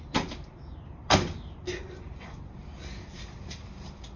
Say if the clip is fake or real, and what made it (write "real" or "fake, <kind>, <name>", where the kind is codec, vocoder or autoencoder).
real